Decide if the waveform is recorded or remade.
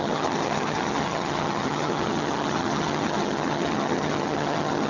remade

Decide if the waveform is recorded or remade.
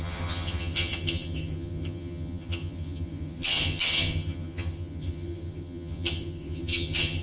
remade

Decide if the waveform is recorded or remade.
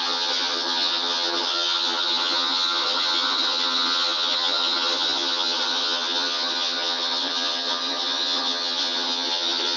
remade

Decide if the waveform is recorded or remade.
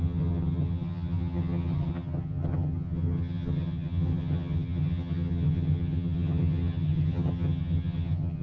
remade